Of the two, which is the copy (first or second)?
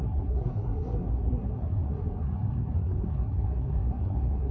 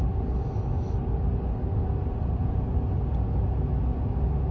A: first